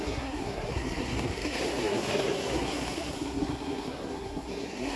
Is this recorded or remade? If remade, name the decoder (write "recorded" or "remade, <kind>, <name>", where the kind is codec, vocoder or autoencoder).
remade, codec, SNAC